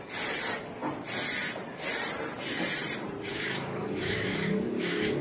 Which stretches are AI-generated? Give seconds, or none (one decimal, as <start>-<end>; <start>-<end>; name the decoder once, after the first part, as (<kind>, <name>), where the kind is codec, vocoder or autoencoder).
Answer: 3.3-5.2 (codec, DAC)